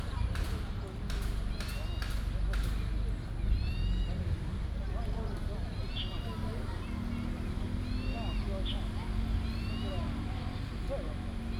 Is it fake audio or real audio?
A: real